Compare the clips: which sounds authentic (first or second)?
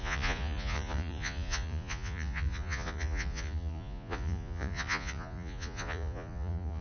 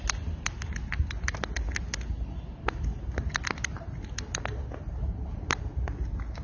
second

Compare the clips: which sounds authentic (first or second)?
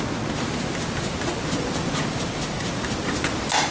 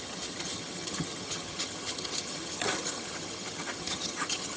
first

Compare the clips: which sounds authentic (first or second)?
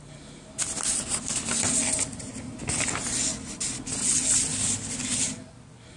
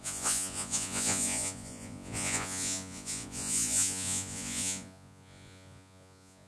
first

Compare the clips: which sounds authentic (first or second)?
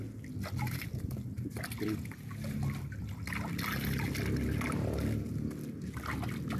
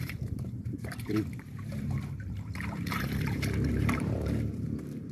first